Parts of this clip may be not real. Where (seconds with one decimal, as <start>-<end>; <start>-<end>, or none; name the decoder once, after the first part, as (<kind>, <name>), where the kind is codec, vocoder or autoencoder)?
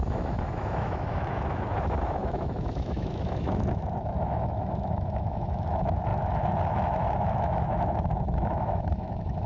0.0-9.5 (autoencoder, DAC-VAE)